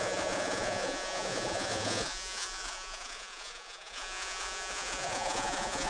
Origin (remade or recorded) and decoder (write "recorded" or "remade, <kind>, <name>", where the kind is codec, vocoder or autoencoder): remade, vocoder, Vocos